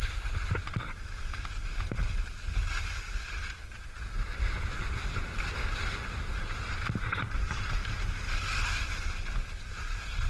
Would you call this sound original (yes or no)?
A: yes